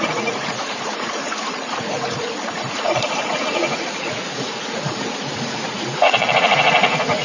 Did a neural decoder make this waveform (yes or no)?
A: yes